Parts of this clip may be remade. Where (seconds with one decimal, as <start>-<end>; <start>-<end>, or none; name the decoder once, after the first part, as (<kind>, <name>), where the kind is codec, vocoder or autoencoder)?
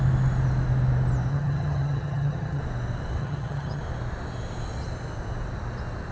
1.3-2.6 (vocoder, HiFi-GAN); 3.2-3.8